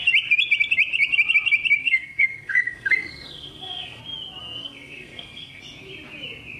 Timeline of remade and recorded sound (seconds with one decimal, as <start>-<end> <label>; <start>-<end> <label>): 0.0-1.8 recorded; 1.8-4.0 remade; 4.0-4.4 recorded; 4.4-5.6 remade; 5.6-6.6 recorded